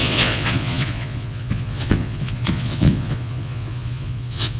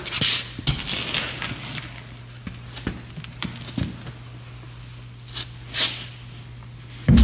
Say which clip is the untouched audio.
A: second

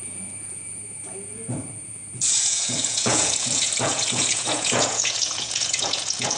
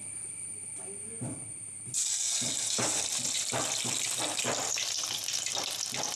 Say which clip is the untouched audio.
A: second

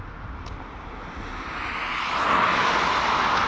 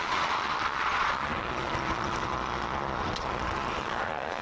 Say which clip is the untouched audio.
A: first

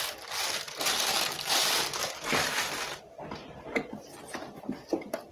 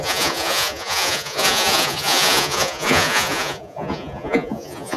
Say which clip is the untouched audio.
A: first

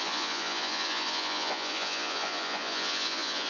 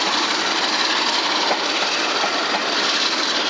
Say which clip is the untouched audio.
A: second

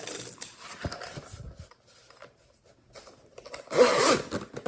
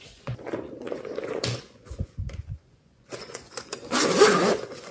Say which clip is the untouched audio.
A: first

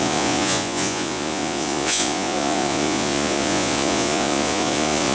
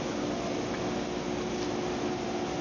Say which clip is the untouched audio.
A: second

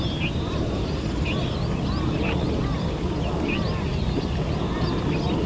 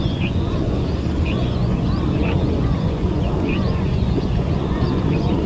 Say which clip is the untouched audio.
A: first